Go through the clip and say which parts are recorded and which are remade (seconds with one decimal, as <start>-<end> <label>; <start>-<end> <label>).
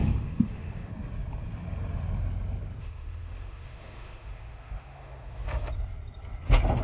0.0-0.9 remade; 0.9-2.8 recorded; 2.8-5.7 remade; 5.7-6.8 recorded